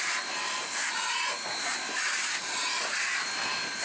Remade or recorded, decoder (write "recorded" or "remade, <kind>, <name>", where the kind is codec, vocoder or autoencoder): recorded